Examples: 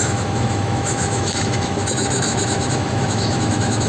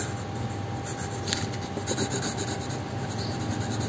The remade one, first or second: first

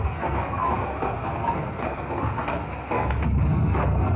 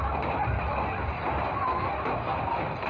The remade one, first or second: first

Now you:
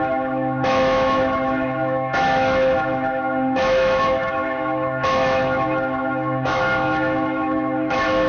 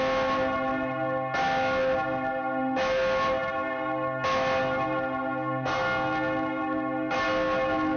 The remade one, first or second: first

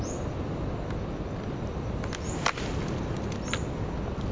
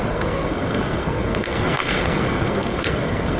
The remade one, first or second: second